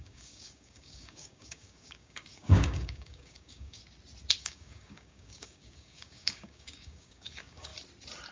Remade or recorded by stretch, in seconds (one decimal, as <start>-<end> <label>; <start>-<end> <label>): 0.0-3.8 remade; 3.8-4.4 recorded; 4.4-7.7 remade; 7.7-8.3 recorded